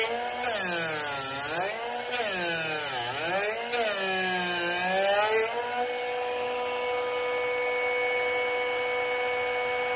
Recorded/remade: recorded